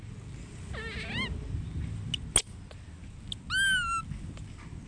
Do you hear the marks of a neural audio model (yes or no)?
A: no